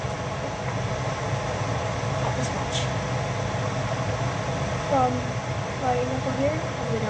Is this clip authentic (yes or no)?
yes